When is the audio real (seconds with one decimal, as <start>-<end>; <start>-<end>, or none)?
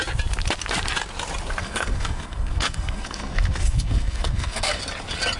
0.0-1.6; 4.8-5.4